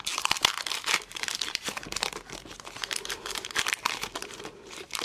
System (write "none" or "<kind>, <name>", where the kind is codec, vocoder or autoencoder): vocoder, BigVGAN v2